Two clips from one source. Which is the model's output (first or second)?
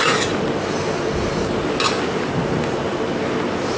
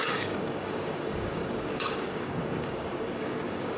second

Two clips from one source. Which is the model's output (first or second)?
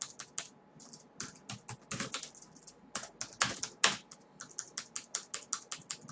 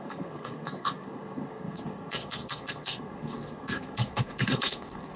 second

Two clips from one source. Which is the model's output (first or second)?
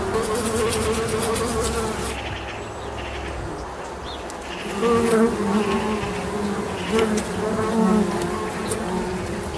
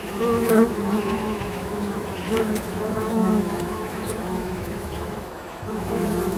second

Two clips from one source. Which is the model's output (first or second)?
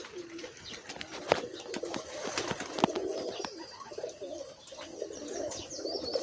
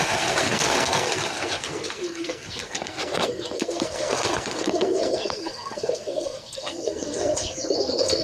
second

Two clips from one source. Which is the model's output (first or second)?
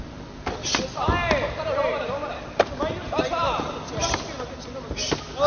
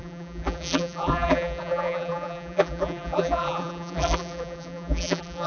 second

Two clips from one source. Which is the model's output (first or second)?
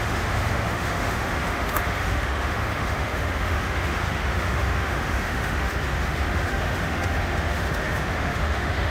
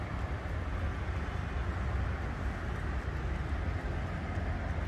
first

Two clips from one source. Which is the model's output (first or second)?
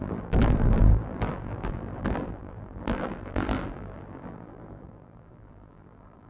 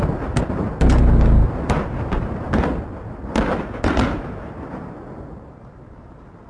first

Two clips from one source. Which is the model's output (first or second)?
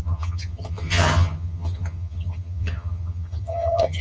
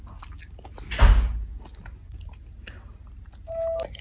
first